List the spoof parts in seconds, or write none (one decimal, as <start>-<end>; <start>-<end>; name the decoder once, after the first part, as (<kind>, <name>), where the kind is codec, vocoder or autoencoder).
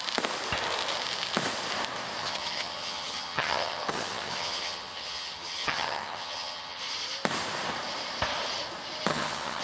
2.2-6.8 (vocoder, HiFi-GAN); 9.1-9.6